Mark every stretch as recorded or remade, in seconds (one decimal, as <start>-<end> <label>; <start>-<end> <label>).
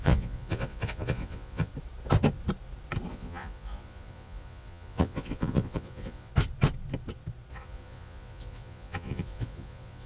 0.0-1.7 remade; 1.7-3.1 recorded; 3.1-6.3 remade; 6.3-7.5 recorded; 7.5-10.1 remade